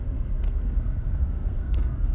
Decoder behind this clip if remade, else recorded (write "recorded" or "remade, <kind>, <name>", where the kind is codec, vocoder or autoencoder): remade, codec, SNAC